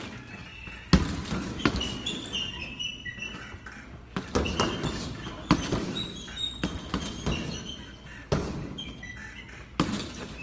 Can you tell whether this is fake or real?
real